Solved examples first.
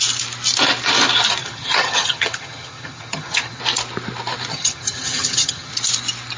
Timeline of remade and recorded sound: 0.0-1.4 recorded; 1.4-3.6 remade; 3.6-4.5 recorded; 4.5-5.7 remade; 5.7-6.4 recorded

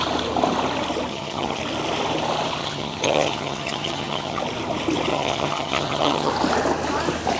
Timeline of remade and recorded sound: 0.0-1.1 recorded; 1.1-1.6 remade; 1.6-2.6 recorded; 2.6-4.4 remade; 4.4-5.1 recorded; 5.1-6.3 remade; 6.3-7.4 recorded

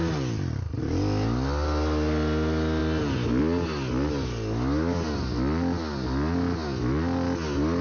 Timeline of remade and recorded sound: 0.0-7.8 recorded